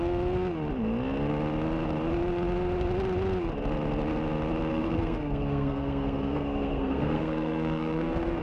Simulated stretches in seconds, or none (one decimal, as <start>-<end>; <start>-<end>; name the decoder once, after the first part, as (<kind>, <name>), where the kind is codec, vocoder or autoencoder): 4.7-8.4 (codec, SNAC)